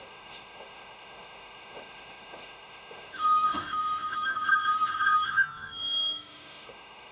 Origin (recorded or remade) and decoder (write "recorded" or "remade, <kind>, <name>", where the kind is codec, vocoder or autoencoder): remade, autoencoder, DAC-VAE